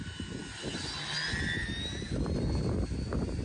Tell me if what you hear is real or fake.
real